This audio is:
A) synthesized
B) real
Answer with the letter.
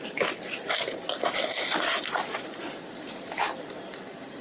B